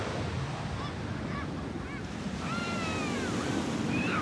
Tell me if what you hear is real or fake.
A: real